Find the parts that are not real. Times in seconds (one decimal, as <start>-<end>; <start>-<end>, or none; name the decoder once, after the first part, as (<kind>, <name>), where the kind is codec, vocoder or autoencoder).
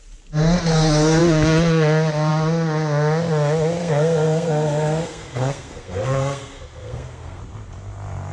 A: 3.8-7.4 (codec, SNAC)